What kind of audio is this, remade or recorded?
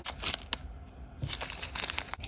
recorded